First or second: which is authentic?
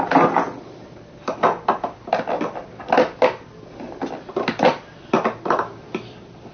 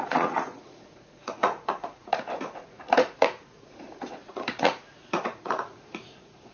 first